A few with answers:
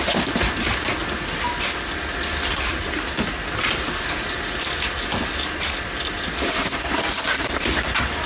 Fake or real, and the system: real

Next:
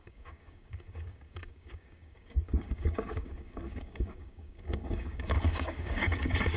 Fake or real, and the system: fake, codec, DAC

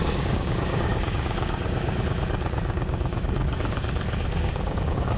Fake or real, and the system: fake, codec, DAC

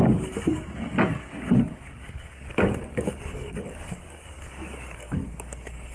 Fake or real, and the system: fake, codec, DAC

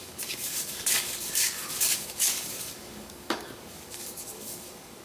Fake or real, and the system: fake, codec, DAC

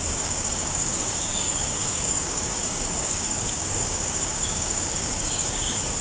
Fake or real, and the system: fake, codec, DAC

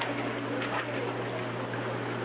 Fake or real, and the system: real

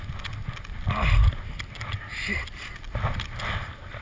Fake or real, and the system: real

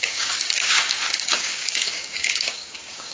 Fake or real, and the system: fake, codec, DAC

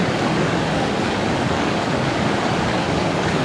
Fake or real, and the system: fake, codec, DAC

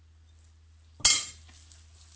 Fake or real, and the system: real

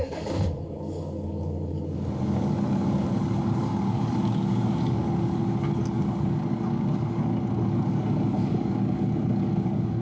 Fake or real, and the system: fake, codec, DAC